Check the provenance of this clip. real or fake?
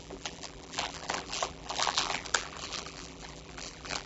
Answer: fake